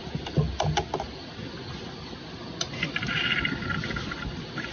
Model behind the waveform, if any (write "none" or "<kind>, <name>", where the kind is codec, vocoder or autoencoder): none